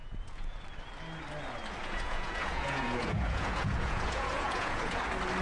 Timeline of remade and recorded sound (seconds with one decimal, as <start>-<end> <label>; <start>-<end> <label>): 0.0-0.6 remade; 0.6-1.8 recorded; 1.8-5.0 remade; 5.0-5.4 recorded